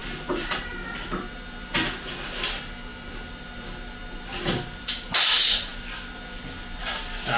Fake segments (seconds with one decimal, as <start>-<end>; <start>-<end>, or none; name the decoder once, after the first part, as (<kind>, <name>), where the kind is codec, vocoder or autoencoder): 0.0-0.6 (vocoder, BigVGAN v2)